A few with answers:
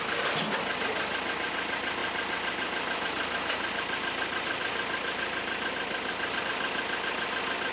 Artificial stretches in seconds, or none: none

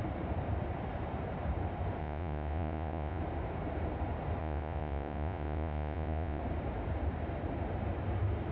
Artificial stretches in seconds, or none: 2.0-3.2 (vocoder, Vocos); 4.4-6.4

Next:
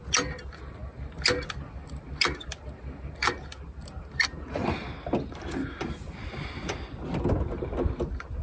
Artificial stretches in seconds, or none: none